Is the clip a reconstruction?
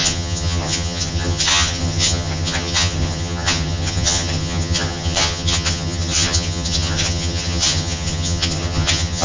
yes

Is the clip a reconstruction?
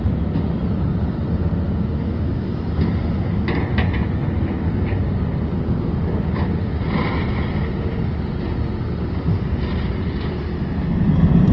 no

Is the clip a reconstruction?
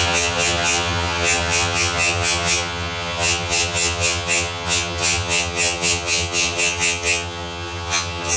yes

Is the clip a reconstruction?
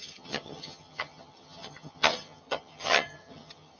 yes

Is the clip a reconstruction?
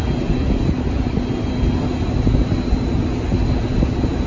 no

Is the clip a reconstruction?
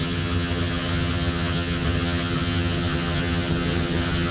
yes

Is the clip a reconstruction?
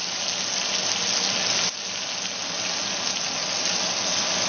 no